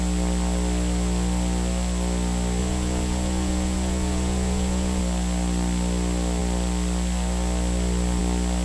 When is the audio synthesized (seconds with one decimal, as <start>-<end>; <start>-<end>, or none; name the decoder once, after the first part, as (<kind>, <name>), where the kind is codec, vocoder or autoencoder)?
2.6-5.0 (vocoder, Vocos)